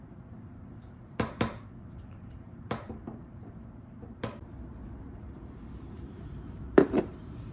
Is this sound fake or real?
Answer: fake